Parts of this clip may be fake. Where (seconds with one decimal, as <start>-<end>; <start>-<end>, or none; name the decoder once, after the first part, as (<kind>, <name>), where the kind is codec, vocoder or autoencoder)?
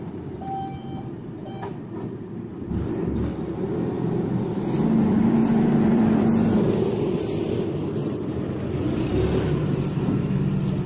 1.2-2.5 (vocoder, BigVGAN v2); 5.4-9.1